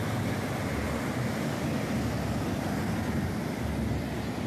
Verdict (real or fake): real